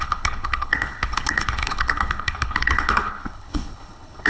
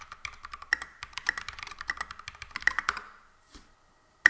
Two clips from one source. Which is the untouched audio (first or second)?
second